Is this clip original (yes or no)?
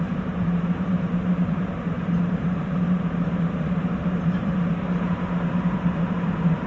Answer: no